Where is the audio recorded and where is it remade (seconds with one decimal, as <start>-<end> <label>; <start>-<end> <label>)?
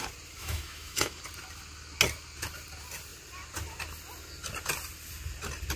0.0-0.4 recorded; 0.4-1.2 remade; 1.2-5.8 recorded